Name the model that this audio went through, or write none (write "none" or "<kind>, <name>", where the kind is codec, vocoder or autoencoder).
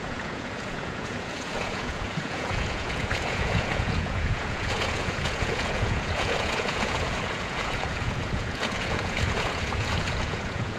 vocoder, Vocos